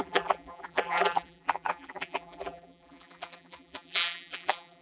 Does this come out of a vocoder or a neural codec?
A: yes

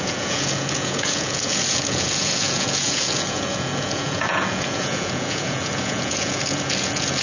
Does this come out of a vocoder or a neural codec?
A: yes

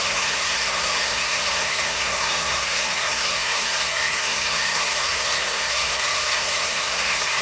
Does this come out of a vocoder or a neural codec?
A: yes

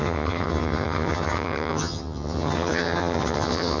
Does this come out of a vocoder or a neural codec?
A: yes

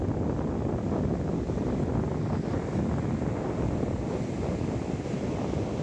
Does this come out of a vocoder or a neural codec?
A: no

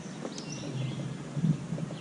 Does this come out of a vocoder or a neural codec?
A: no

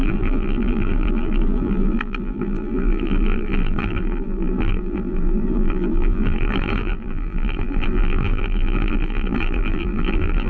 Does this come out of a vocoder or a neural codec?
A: yes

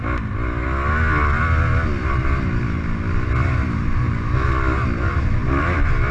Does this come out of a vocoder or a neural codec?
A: no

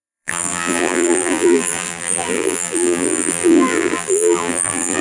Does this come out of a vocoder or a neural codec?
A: yes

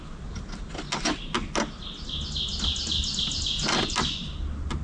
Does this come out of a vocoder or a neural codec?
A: no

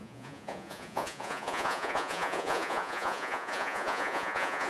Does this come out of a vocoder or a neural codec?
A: yes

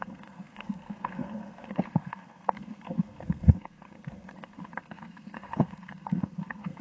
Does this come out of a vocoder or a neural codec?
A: yes